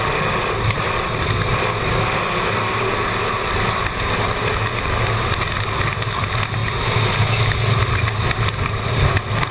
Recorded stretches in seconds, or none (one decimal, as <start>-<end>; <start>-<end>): 0.0-9.5